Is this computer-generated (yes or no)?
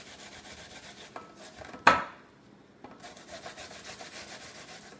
no